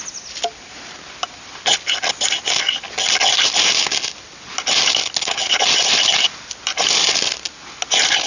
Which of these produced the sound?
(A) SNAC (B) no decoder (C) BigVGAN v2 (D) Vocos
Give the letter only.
B